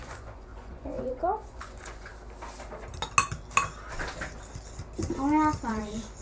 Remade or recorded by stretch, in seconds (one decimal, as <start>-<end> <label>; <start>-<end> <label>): 0.0-2.1 remade; 2.1-5.7 recorded; 5.7-6.2 remade